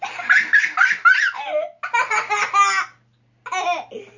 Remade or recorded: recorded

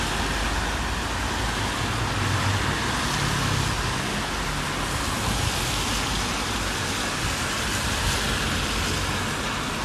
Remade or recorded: recorded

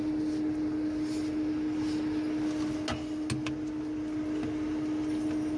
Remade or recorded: recorded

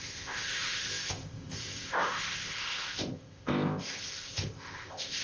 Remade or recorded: remade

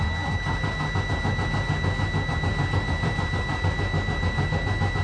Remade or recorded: recorded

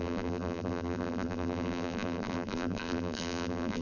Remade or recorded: remade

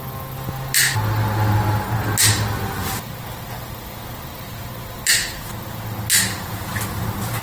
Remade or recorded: recorded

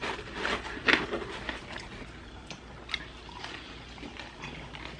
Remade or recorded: recorded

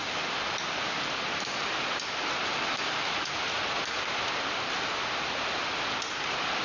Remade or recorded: recorded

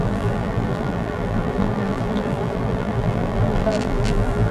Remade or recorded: remade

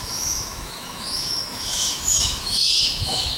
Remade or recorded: remade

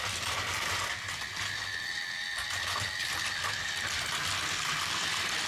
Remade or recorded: recorded